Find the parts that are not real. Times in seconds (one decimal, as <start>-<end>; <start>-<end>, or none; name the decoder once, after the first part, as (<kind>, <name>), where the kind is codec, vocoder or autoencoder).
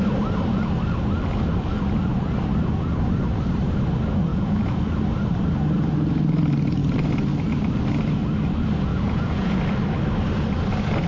4.3-4.8 (vocoder, Vocos); 8.9-9.6